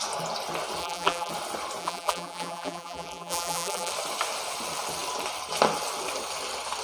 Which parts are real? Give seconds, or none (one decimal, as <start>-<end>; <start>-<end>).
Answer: 0.0-0.8; 1.3-1.8; 3.9-6.8